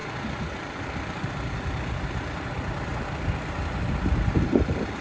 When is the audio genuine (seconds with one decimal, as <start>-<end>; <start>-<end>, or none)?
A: 0.0-5.0